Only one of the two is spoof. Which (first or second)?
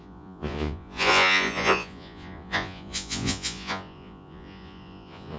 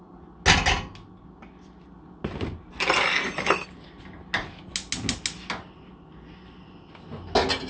first